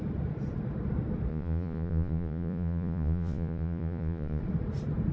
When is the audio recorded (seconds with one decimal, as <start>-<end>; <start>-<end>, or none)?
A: 0.0-1.3; 4.4-5.1